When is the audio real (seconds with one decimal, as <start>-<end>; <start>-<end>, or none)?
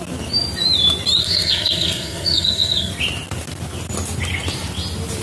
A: 0.0-1.2; 2.9-5.2